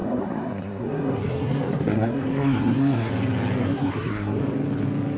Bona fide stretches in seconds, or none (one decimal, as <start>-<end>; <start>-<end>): 3.1-3.6; 4.4-5.2